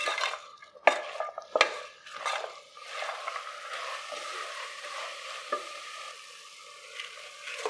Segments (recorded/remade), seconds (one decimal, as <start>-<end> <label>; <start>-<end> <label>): 0.0-4.3 recorded; 4.3-6.0 remade; 6.0-7.7 recorded